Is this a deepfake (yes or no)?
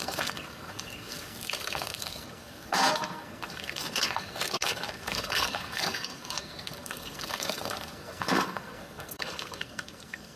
yes